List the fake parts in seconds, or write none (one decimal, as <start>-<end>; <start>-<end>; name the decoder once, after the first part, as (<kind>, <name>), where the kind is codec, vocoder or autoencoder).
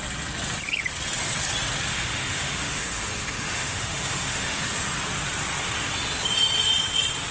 1.9-4.6 (autoencoder, DAC-VAE)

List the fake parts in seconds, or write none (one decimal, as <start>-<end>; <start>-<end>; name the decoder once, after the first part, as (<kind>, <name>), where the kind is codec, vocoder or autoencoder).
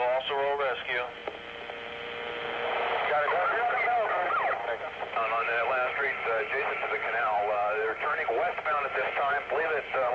none